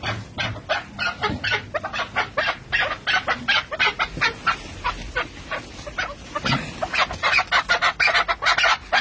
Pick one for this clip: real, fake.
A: real